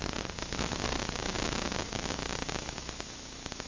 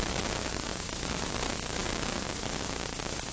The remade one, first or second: first